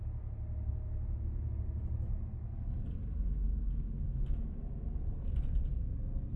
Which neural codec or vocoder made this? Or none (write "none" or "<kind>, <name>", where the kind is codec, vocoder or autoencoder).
none